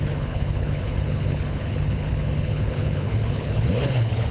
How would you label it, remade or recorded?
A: remade